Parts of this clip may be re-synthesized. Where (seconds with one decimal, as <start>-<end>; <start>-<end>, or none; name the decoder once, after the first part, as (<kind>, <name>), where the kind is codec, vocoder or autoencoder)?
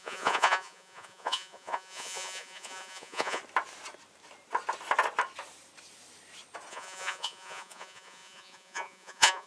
0.0-3.4 (vocoder, Vocos); 6.7-9.5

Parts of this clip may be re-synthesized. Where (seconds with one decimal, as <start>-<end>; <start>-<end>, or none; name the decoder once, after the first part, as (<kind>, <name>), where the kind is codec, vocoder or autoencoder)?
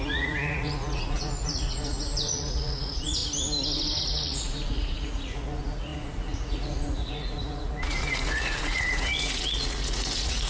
0.0-3.2 (vocoder, Vocos); 4.0-10.5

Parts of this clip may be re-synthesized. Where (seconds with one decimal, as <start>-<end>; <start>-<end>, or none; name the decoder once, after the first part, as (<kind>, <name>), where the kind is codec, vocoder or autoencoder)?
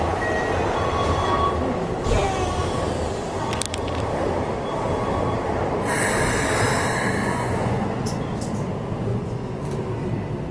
7.2-8.2 (vocoder, Vocos); 9.1-9.6